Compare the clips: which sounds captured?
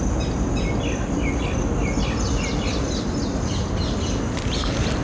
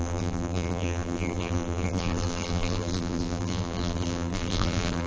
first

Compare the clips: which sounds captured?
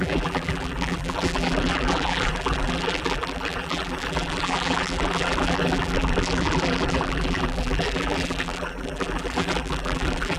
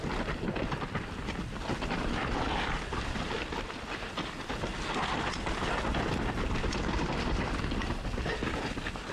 second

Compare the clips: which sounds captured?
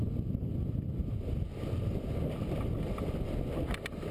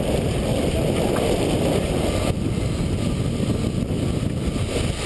second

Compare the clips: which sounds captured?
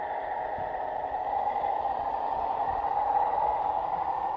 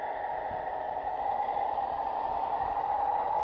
first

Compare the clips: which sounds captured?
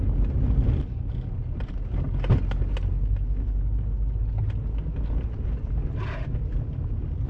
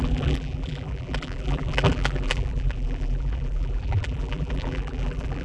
first